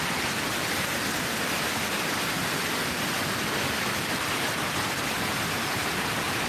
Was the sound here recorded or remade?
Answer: recorded